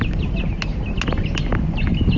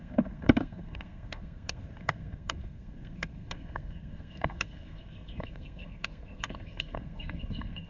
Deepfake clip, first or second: second